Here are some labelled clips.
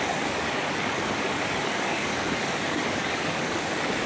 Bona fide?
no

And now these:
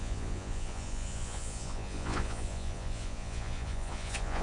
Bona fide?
no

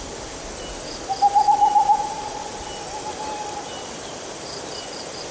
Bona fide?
yes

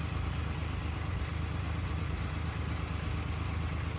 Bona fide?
yes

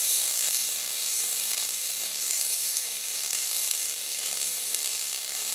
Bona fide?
no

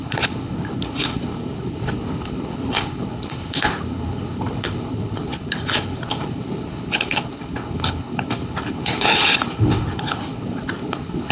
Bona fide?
no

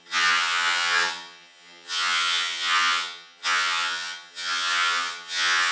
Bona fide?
no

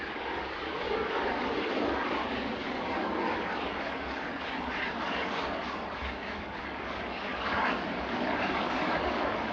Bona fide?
no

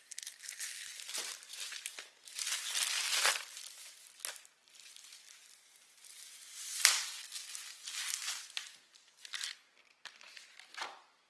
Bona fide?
yes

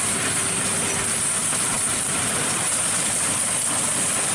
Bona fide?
yes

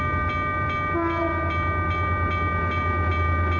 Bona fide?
yes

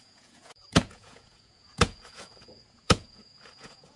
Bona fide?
no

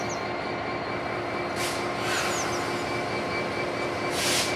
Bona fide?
yes